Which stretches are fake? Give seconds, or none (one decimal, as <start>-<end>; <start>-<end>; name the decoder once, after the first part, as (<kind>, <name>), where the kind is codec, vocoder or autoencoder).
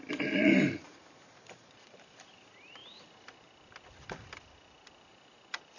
0.5-2.2 (vocoder, BigVGAN v2)